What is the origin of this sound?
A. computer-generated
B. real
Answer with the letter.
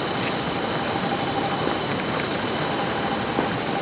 B